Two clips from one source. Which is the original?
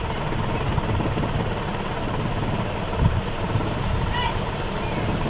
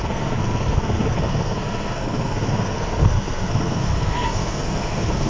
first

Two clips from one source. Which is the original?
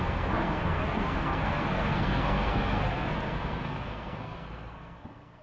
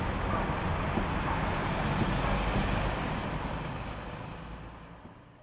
second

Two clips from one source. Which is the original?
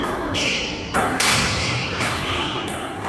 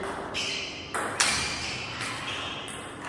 second